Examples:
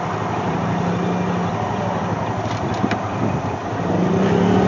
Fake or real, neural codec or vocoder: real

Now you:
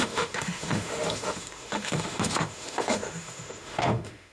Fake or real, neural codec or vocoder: fake, autoencoder, DAC-VAE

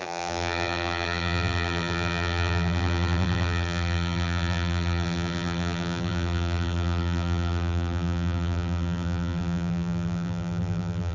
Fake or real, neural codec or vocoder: fake, vocoder, BigVGAN v2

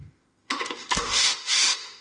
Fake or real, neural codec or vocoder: fake, autoencoder, DAC-VAE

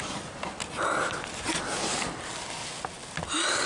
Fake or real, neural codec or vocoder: real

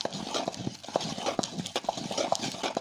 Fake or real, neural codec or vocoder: real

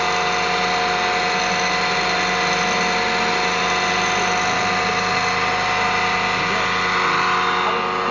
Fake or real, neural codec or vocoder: real